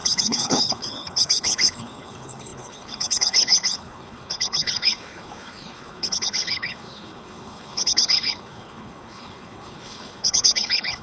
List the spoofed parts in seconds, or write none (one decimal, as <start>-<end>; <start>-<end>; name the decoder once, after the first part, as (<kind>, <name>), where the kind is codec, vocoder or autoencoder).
0.0-11.0 (codec, HILCodec)